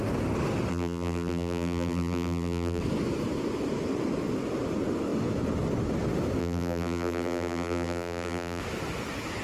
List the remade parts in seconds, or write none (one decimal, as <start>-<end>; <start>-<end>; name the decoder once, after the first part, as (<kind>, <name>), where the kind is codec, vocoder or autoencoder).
0.7-2.8 (vocoder, BigVGAN v2); 6.4-8.6